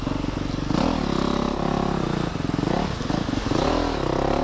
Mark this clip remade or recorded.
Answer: recorded